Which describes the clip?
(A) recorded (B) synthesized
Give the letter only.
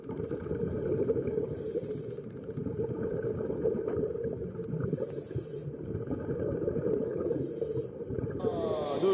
B